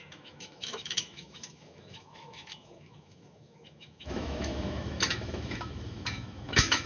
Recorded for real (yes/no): no